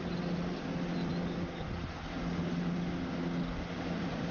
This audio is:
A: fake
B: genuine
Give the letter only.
B